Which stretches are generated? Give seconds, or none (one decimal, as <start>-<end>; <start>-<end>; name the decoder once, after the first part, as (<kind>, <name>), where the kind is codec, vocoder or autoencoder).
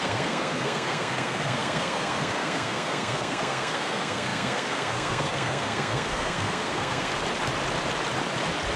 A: 0.0-7.1 (codec, SNAC)